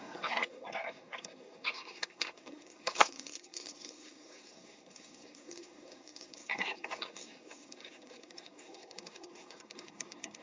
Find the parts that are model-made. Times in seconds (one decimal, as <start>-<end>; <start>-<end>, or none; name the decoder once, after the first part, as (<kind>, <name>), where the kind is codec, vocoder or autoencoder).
0.0-10.4 (codec, SNAC)